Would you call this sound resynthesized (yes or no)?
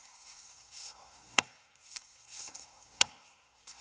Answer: yes